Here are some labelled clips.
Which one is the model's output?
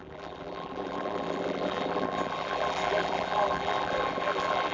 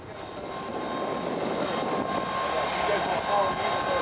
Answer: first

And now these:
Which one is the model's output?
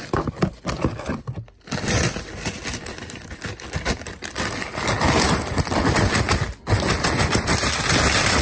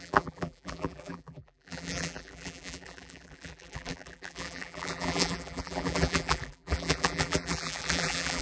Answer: second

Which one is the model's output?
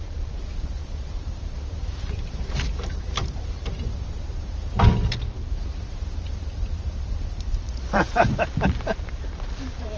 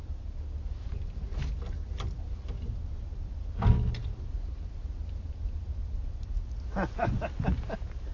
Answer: first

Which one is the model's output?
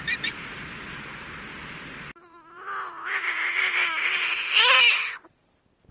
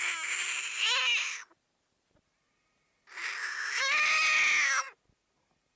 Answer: first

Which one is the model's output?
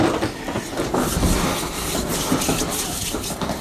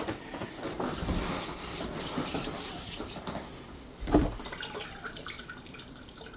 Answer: second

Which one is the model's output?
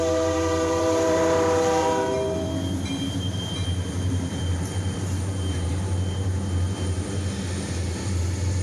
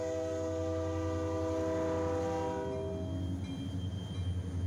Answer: first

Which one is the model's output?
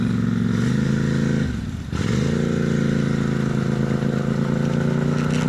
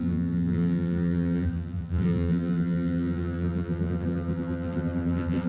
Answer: second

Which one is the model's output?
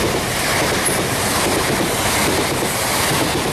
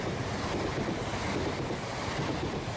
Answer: second